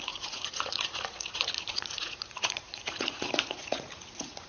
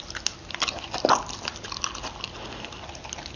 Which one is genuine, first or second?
second